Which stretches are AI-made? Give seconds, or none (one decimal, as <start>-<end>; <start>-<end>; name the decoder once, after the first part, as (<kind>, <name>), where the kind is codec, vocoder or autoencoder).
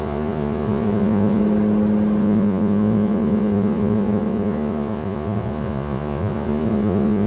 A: 0.0-1.4 (vocoder, Vocos); 2.2-7.3